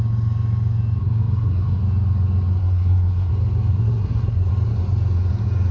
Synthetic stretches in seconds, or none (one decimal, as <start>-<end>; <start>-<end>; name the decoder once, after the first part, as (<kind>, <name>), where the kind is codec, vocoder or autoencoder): 1.0-1.8 (codec, SNAC); 2.6-3.3; 3.7-4.5